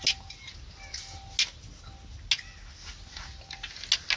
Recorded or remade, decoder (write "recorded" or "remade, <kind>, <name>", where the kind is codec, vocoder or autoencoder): recorded